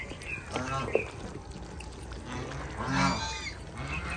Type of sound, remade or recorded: recorded